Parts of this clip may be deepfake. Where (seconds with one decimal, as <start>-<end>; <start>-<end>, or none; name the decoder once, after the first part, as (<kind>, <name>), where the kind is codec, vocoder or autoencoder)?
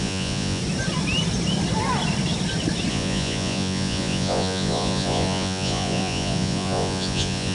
0.0-0.6 (vocoder, Vocos); 2.9-7.5